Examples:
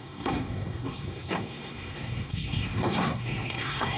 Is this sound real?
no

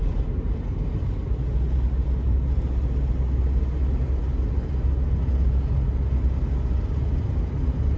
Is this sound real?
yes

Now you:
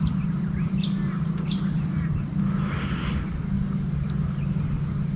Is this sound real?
yes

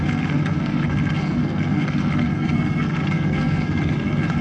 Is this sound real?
no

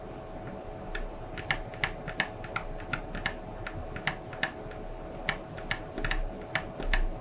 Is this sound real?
yes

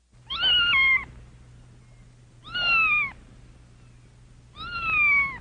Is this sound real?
yes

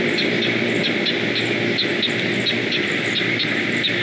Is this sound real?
yes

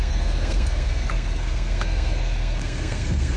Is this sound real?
no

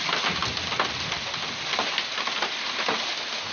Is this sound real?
yes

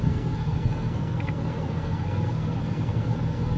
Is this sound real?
no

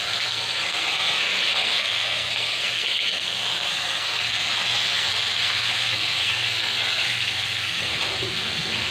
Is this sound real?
no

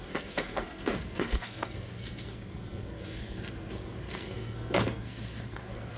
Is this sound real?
no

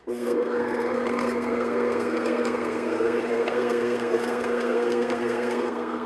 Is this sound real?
no